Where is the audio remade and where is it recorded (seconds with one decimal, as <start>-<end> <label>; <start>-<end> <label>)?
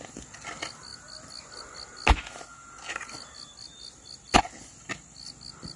0.0-5.8 recorded